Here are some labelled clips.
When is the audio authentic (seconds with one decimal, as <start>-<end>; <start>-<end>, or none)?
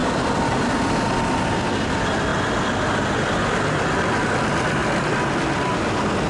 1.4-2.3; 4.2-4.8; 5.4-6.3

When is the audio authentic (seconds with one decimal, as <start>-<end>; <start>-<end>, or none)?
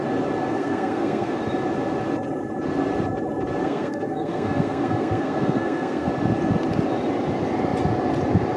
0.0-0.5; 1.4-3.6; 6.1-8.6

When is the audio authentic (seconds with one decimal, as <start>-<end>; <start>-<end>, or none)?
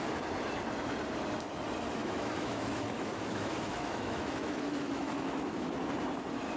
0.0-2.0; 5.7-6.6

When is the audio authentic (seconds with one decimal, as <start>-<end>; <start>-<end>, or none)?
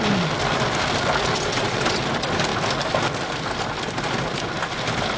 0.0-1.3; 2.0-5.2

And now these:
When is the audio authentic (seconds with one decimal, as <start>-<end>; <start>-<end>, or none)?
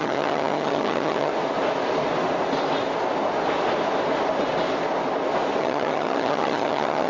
1.3-5.6